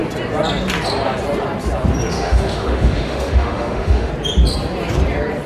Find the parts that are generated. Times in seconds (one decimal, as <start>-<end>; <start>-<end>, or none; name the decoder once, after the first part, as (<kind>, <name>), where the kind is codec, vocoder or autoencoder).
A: 2.1-4.1 (autoencoder, DAC-VAE)